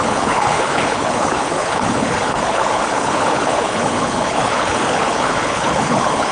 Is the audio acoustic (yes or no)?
no